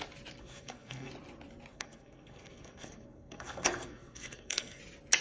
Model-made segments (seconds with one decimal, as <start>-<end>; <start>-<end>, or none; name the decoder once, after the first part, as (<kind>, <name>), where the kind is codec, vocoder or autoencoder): 0.4-1.1 (codec, SNAC); 1.7-4.8